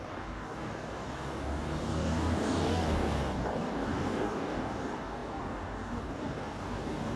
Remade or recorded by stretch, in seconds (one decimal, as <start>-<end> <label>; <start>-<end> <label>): 0.0-7.2 remade